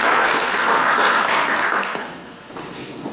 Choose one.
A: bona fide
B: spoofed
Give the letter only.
B